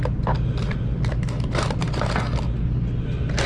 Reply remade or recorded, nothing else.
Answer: recorded